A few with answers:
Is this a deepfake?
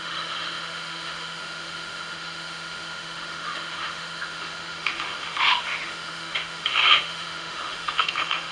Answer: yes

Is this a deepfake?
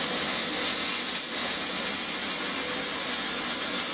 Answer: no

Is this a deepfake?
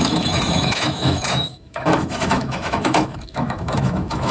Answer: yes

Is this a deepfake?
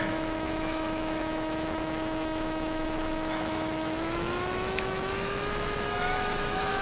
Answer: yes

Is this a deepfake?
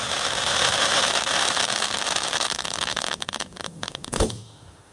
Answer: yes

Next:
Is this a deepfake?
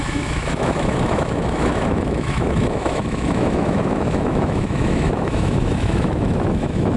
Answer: yes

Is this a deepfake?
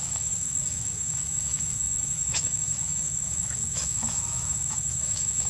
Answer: yes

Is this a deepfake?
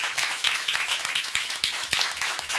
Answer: yes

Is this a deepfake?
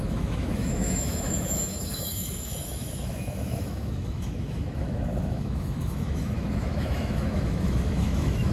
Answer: yes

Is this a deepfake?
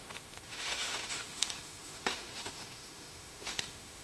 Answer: yes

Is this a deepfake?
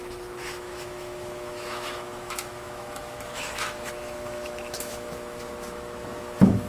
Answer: yes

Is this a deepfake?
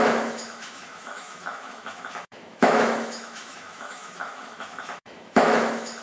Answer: yes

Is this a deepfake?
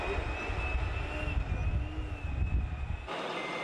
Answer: no